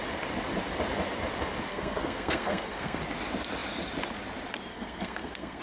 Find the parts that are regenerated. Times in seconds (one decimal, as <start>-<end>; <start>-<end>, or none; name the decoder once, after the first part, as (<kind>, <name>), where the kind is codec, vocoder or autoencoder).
1.7-3.0 (codec, SNAC); 4.7-5.6